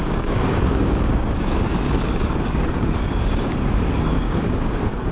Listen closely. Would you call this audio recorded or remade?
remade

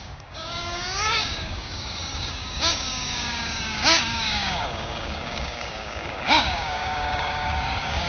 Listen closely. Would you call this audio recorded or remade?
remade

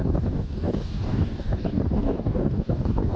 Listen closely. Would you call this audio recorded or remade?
remade